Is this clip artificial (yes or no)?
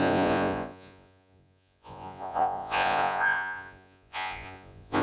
yes